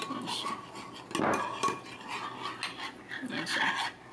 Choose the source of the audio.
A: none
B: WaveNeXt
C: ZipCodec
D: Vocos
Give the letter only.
A